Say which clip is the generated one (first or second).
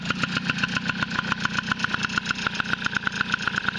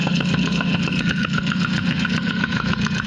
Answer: second